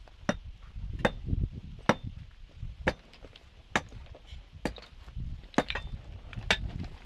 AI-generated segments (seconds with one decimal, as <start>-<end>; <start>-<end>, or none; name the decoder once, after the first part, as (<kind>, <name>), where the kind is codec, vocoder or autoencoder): none

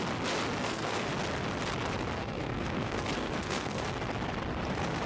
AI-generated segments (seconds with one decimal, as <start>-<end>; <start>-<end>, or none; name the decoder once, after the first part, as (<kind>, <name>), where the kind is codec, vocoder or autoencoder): 0.6-1.1 (codec, SNAC); 2.2-3.8

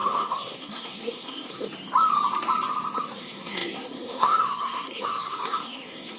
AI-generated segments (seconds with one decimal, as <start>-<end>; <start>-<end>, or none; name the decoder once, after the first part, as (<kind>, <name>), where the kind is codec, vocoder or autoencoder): 0.0-1.7 (codec, SNAC); 3.2-6.2

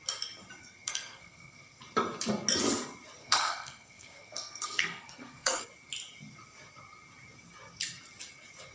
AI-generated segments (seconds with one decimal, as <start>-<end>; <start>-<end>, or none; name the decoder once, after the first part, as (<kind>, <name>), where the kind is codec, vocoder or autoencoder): 0.6-1.8 (codec, SNAC); 3.2-5.6

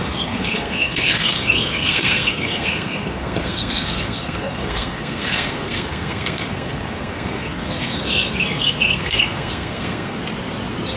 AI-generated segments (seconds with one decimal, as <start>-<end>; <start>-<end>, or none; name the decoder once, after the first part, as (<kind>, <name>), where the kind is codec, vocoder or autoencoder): 0.0-10.2 (codec, SNAC)

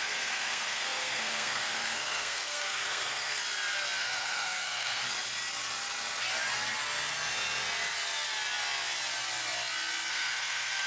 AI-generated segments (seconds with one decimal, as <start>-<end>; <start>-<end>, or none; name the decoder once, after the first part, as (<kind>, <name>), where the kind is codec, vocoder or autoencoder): 0.0-3.4 (codec, SNAC); 4.0-5.0; 10.1-10.9

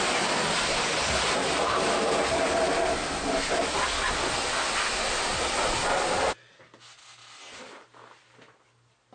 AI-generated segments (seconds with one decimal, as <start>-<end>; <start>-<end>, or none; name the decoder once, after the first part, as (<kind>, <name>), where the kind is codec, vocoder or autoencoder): none